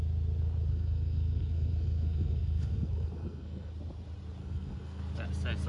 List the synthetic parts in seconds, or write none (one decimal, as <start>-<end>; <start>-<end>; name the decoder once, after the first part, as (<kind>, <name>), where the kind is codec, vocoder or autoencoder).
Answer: 0.7-3.7 (codec, SNAC); 4.4-5.0